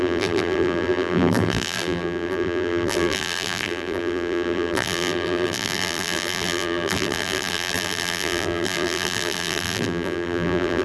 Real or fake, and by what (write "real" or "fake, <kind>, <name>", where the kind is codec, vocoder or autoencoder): fake, vocoder, BigVGAN v2